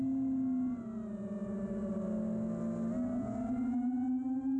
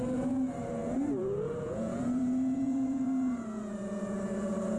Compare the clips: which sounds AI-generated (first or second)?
second